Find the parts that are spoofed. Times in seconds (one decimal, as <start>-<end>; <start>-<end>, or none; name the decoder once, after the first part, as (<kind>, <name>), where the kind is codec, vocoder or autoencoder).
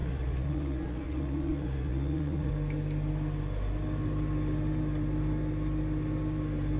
0.0-2.5 (vocoder, Vocos)